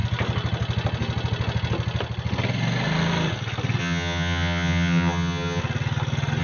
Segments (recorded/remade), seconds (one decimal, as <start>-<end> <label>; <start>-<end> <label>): 0.0-3.8 recorded; 3.8-5.6 remade; 5.6-6.4 recorded